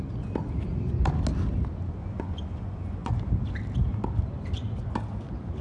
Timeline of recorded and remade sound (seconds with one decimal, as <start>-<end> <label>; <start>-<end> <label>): 0.0-2.0 recorded; 2.0-3.2 remade; 3.2-5.6 recorded